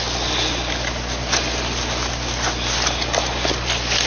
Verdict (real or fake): real